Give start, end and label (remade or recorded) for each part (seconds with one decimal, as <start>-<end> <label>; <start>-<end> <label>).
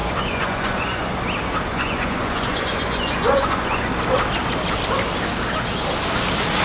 0.0-1.1 remade; 1.1-1.7 recorded; 1.7-3.9 remade; 3.9-6.6 recorded